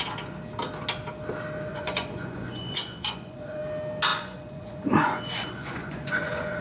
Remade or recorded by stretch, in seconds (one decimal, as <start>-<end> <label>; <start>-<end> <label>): 0.0-1.7 recorded; 1.7-3.6 remade; 3.6-4.1 recorded; 4.1-6.6 remade